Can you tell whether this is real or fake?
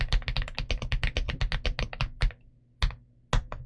real